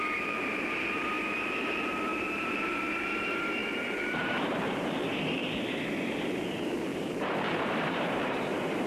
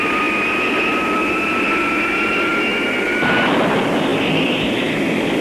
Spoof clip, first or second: first